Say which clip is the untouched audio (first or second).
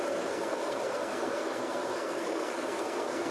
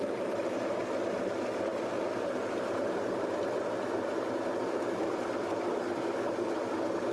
second